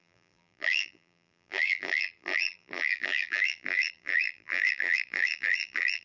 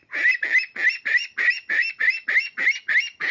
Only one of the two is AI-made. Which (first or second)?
first